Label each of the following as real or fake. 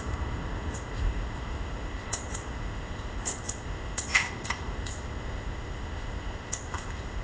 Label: fake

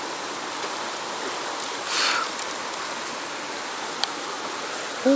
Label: real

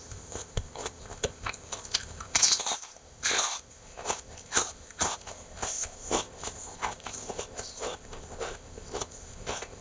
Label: fake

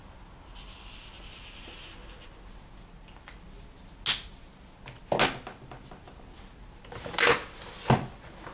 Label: real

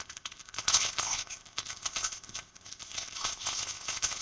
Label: fake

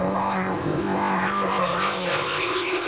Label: fake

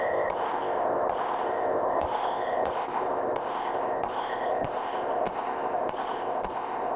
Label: fake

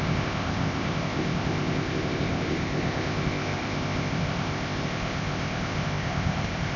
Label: fake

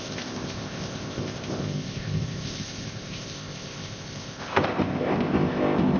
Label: fake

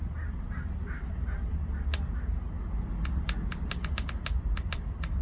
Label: real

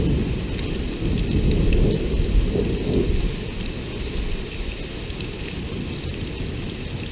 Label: real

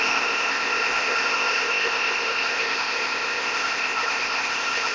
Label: fake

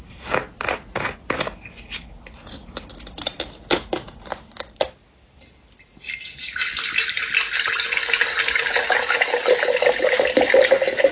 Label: real